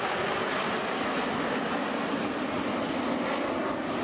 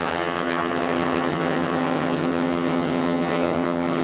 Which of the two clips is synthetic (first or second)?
second